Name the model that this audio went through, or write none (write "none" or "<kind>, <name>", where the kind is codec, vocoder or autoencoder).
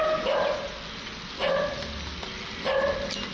none